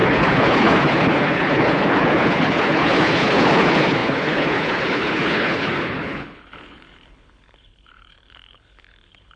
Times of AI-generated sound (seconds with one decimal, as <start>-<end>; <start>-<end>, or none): 0.0-9.4